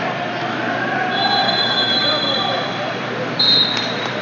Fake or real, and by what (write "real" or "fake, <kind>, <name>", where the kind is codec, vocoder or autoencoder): fake, vocoder, BigVGAN v2